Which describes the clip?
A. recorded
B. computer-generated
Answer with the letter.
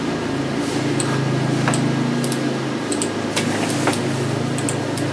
A